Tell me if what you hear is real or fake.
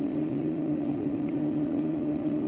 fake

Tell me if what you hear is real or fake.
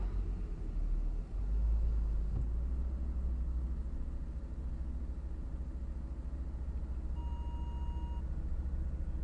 real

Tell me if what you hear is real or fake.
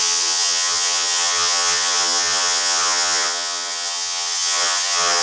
fake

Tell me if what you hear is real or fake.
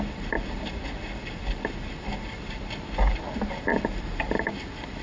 real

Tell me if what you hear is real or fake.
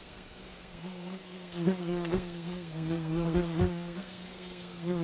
fake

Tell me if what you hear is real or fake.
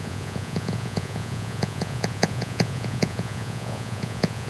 fake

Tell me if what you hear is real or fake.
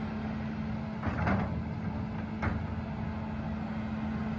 real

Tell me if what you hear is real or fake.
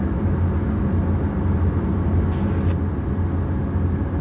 real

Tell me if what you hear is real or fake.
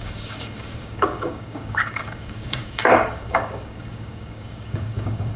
fake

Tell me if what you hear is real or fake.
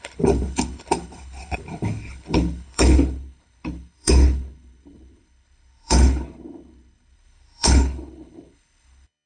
fake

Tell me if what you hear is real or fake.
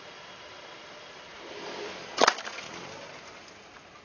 real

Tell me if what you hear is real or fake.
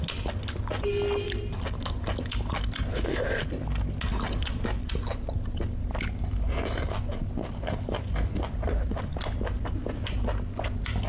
real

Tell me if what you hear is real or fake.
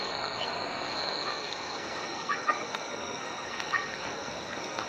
fake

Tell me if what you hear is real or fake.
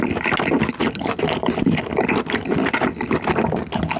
real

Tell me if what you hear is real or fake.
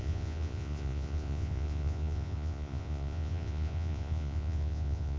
fake